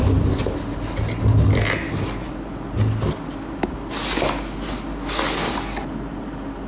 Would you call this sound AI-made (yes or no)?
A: no